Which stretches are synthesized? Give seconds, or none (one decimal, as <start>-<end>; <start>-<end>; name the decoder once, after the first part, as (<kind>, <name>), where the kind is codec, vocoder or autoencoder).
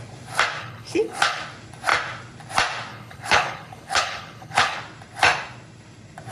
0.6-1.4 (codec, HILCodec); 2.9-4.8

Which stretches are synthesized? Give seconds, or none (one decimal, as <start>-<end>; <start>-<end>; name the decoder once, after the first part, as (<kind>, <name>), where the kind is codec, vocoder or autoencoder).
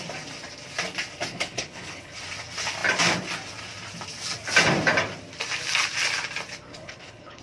1.3-2.2 (codec, HILCodec); 6.7-7.4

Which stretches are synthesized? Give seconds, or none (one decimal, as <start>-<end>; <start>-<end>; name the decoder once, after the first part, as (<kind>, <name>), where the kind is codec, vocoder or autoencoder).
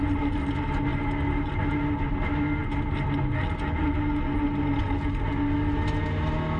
none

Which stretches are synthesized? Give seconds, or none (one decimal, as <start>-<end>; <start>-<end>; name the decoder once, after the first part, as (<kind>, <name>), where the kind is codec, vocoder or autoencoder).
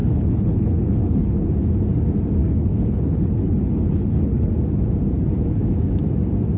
0.0-1.5 (codec, HILCodec); 2.4-4.5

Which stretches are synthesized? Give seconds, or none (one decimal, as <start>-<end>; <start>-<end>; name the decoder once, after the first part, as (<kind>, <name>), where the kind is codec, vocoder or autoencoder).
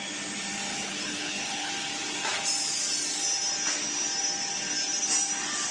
0.7-1.7 (codec, HILCodec)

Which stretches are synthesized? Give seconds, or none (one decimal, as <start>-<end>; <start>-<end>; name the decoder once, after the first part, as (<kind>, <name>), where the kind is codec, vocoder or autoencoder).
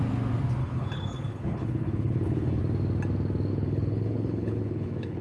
0.6-2.6 (codec, HILCodec); 3.5-5.2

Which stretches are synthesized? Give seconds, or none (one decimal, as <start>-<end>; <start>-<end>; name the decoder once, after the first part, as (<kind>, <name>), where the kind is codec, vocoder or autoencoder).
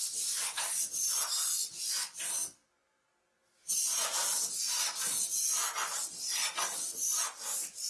none